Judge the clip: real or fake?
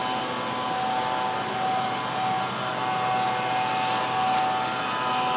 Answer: real